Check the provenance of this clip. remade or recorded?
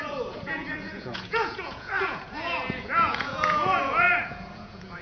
remade